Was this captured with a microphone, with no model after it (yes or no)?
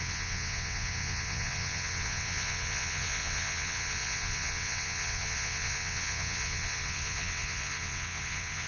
no